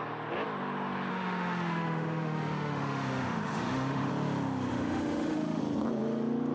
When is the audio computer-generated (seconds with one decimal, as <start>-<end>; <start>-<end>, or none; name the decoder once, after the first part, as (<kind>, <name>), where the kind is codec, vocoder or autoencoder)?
1.1-4.1 (autoencoder, DAC-VAE); 4.7-5.6